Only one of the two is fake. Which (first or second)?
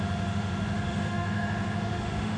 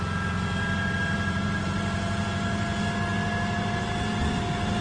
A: first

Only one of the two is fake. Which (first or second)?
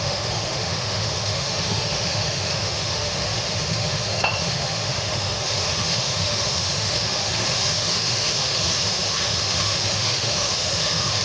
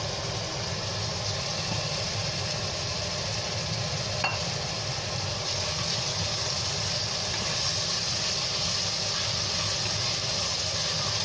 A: first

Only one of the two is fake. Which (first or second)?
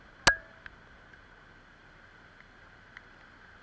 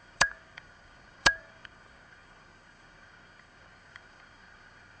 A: second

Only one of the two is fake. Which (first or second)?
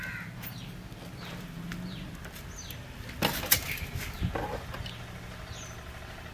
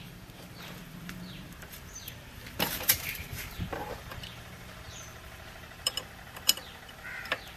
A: second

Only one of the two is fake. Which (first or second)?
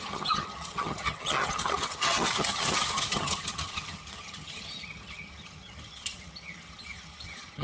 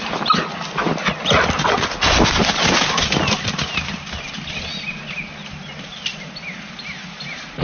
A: first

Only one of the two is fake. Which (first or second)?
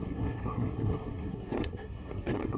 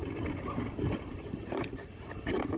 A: first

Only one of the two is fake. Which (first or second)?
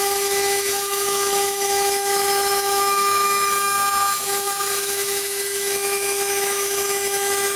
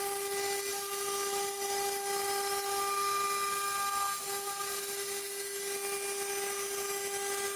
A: first